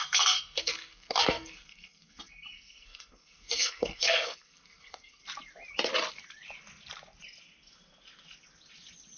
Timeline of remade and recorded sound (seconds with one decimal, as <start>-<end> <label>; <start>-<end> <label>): 0.0-5.2 remade; 5.2-9.2 recorded